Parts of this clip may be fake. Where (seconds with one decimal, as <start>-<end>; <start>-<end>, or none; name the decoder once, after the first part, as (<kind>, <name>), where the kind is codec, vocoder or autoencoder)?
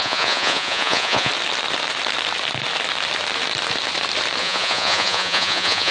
0.0-1.3 (vocoder, Vocos); 4.4-5.9